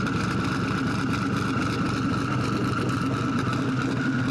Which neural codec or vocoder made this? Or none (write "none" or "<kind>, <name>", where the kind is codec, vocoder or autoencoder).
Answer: none